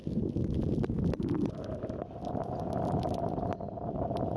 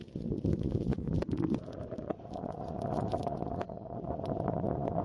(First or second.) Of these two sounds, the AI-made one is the second